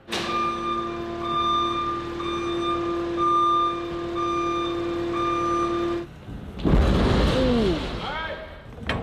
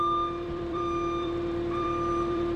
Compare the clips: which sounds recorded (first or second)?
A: first